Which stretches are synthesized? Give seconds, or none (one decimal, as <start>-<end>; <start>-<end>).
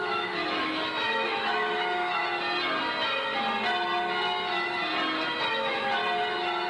0.0-2.2; 5.5-6.0